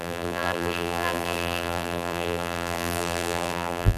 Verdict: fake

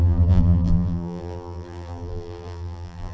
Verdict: fake